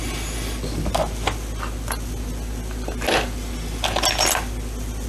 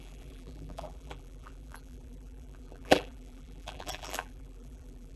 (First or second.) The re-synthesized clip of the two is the second